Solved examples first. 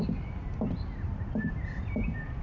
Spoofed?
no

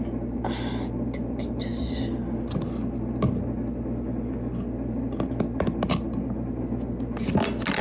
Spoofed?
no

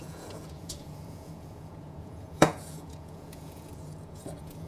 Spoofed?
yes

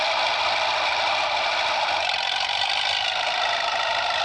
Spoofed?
no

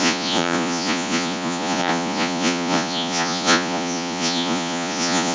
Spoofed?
yes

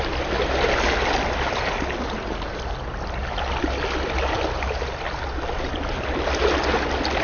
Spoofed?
no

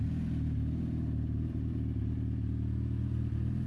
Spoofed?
no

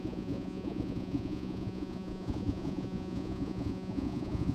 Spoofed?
yes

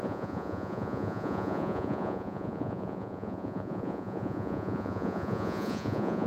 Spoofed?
yes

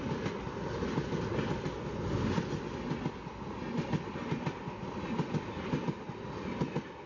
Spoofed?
no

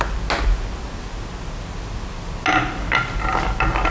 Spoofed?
no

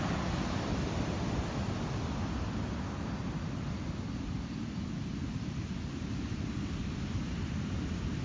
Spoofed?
no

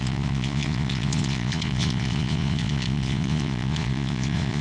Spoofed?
yes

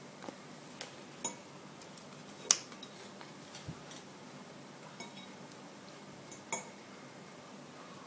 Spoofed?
no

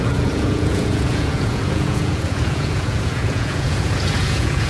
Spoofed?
yes